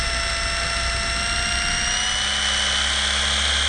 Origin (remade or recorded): recorded